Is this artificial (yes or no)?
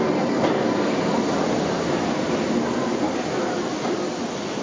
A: no